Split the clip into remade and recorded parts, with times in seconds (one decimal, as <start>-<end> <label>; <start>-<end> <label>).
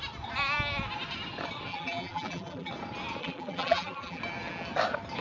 0.0-1.7 recorded; 1.7-2.7 remade; 2.7-3.2 recorded; 3.2-4.2 remade; 4.2-5.2 recorded